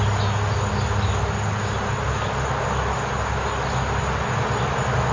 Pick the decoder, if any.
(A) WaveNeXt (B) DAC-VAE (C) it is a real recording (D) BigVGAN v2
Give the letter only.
C